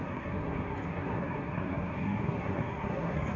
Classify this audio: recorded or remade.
remade